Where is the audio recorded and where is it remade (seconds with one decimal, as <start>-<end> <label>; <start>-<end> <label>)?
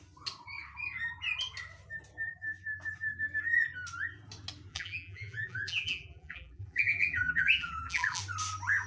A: 0.0-4.7 recorded; 4.7-8.2 remade; 8.2-8.9 recorded